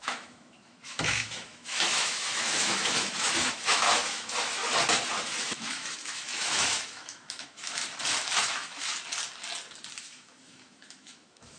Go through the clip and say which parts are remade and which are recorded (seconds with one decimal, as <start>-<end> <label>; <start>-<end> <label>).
0.0-4.6 remade; 4.6-5.4 recorded; 5.4-7.8 remade; 7.8-8.4 recorded; 8.4-8.9 remade; 8.9-10.0 recorded; 10.0-11.6 remade